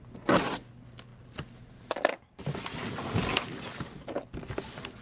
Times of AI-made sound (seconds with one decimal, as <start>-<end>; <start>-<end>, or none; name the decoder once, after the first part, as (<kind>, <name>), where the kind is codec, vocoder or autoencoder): none